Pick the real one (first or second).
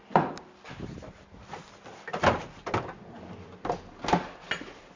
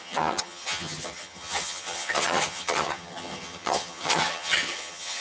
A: first